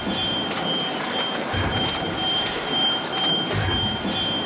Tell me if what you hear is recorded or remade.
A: recorded